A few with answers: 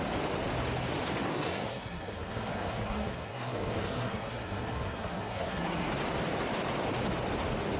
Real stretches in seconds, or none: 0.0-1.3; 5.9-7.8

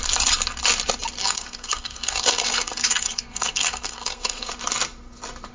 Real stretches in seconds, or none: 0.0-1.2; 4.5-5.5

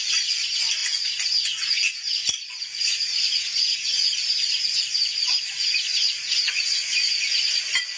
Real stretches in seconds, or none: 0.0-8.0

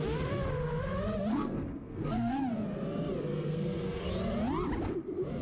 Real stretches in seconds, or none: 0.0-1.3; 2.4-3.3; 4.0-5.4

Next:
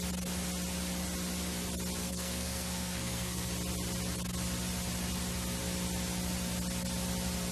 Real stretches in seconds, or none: 0.0-2.0; 3.5-7.5

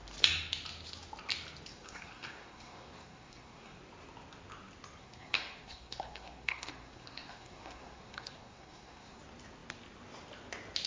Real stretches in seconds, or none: 0.0-1.7; 3.8-5.0; 9.2-10.9